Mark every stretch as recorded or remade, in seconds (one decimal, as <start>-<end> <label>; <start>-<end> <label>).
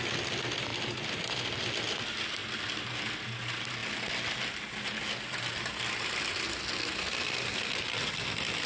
0.0-8.7 recorded